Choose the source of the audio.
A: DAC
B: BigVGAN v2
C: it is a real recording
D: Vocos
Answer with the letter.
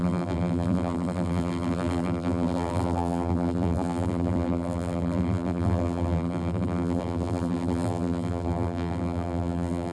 B